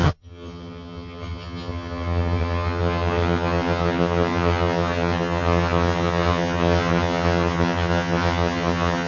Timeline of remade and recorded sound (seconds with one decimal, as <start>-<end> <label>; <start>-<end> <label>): 0.0-9.1 remade